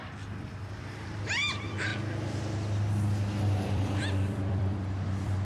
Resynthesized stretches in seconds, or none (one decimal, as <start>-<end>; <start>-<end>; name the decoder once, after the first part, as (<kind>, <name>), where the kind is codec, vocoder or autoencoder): 0.8-1.9 (vocoder, BigVGAN v2); 3.7-5.4